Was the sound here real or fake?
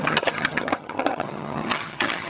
fake